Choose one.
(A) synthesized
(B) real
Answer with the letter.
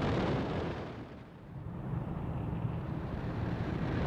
A